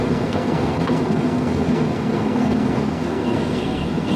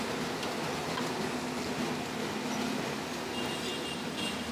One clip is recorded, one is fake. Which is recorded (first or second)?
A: second